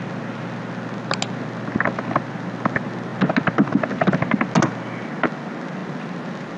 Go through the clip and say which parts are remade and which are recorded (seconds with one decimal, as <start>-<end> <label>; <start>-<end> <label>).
0.0-6.6 recorded